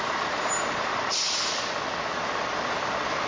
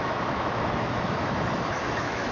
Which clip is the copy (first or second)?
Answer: second